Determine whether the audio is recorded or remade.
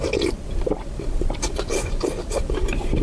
remade